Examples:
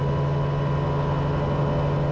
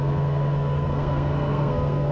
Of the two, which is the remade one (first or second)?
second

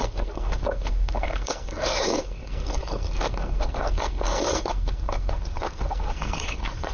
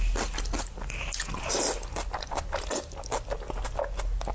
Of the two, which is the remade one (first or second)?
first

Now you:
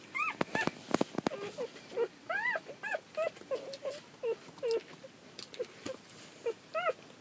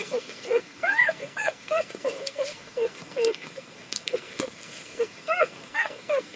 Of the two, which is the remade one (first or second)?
second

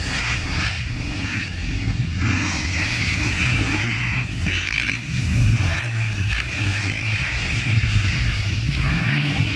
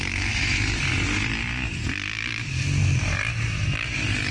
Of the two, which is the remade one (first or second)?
first